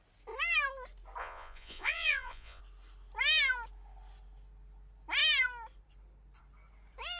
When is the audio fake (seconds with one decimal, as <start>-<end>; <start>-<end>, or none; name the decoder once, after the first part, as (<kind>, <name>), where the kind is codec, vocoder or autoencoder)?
1.2-2.6 (vocoder, Vocos)